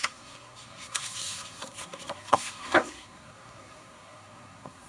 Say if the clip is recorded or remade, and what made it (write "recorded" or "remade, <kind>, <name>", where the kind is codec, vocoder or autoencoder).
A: remade, codec, SNAC